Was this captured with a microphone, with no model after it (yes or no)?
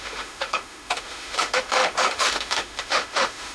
no